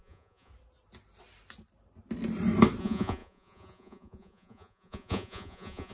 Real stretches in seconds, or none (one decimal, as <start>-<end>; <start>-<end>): 0.5-2.8